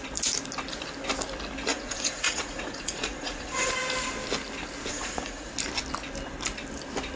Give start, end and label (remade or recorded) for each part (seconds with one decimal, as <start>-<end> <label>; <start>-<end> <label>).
0.0-1.7 recorded; 1.7-3.7 remade; 3.7-4.9 recorded; 4.9-5.5 remade; 5.5-7.2 recorded

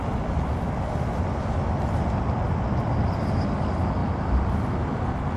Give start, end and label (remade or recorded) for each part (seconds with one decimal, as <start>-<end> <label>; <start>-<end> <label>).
0.0-5.4 recorded

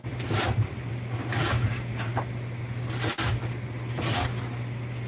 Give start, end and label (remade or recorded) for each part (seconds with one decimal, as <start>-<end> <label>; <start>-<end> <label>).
0.0-0.9 remade; 0.9-1.5 recorded; 1.5-2.1 remade; 2.1-5.1 recorded

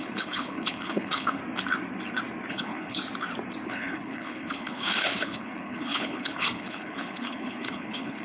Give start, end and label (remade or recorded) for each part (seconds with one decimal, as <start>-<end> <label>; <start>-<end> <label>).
0.0-1.4 remade; 1.4-2.5 recorded; 2.5-3.0 remade; 3.0-3.7 recorded; 3.7-8.2 remade